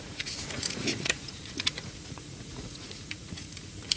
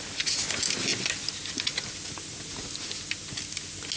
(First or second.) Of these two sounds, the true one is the second